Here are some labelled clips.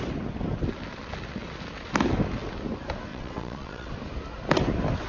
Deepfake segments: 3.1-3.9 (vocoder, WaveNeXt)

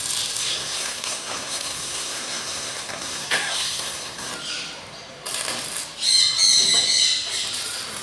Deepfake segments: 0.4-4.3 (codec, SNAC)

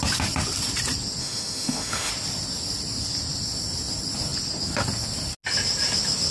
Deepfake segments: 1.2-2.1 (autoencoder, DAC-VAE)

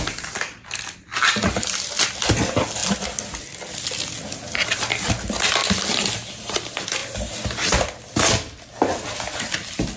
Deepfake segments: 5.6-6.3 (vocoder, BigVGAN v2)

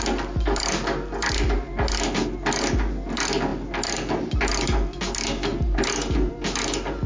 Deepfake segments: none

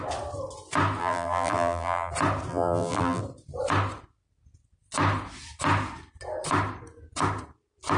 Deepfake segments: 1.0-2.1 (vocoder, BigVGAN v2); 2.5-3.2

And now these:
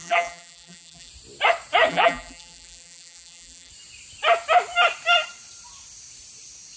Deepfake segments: 0.0-1.1 (vocoder, BigVGAN v2); 1.9-3.7

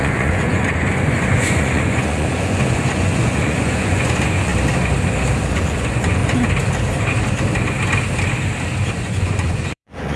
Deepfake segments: 0.0-4.5 (vocoder, Vocos); 5.5-6.2; 8.9-10.2